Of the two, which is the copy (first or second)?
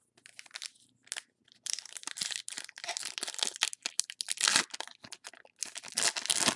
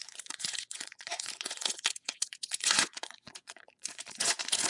second